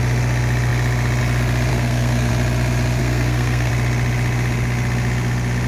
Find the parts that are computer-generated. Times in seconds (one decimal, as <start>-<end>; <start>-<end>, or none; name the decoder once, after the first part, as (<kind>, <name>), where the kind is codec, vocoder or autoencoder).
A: 1.7-2.3 (codec, SNAC); 3.0-3.7